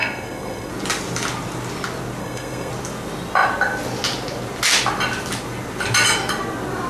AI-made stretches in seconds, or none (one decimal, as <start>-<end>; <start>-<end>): 0.0-0.7; 2.2-2.7